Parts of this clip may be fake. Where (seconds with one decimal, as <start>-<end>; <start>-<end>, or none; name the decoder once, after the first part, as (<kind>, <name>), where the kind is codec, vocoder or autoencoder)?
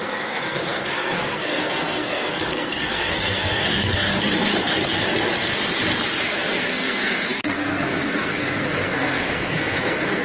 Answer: 0.0-5.0 (codec, SNAC); 6.2-10.2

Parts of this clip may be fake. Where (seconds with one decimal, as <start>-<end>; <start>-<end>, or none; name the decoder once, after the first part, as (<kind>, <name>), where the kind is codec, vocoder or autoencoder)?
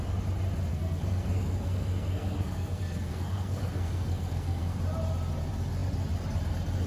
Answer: 0.7-4.8 (codec, SNAC)